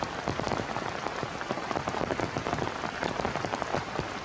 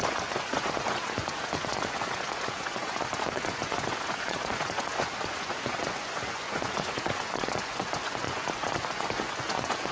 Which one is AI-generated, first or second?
second